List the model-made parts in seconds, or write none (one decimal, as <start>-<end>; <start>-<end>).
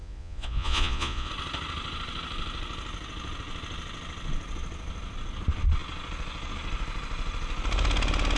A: 0.0-1.3